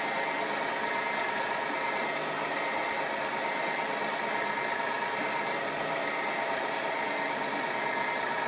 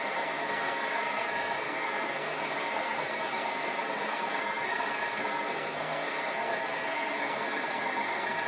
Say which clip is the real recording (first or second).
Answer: first